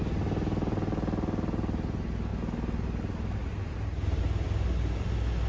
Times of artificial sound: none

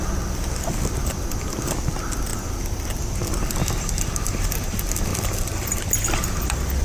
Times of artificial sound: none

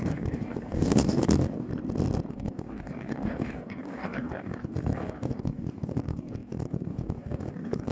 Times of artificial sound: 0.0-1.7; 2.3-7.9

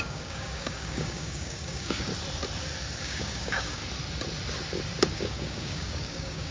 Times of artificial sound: 0.0-2.1; 3.0-3.8; 5.1-6.5